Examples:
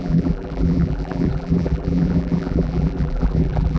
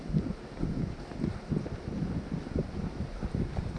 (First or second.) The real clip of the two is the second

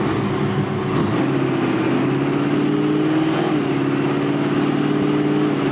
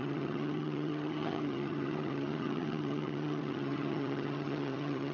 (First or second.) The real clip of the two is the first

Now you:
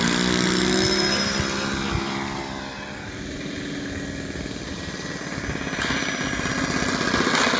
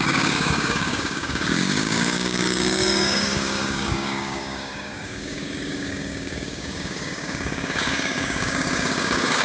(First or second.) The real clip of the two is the first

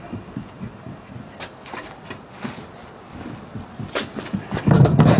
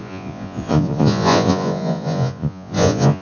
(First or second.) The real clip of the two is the first